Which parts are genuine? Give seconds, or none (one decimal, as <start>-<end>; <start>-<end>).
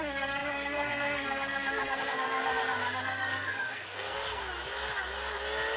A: 4.4-5.8